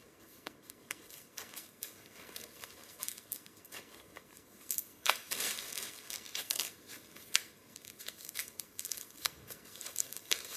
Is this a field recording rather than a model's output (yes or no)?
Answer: no